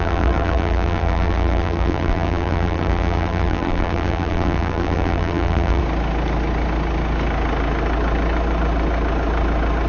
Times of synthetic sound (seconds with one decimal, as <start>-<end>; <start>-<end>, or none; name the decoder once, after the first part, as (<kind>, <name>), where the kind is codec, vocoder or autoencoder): 0.0-5.8 (vocoder, BigVGAN v2)